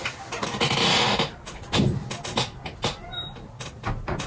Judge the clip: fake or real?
real